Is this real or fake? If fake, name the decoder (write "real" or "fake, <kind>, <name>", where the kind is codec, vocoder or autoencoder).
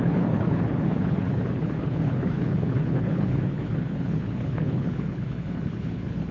fake, codec, HILCodec